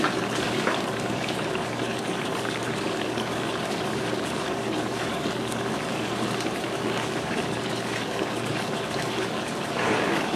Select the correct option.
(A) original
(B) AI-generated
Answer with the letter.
B